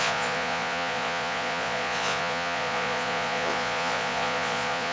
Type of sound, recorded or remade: remade